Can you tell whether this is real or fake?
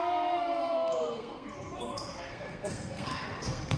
fake